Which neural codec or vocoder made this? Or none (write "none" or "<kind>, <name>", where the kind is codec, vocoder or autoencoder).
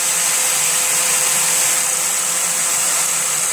none